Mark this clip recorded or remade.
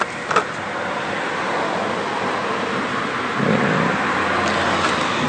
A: recorded